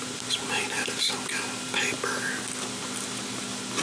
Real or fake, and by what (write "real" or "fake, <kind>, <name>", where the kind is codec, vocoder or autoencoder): real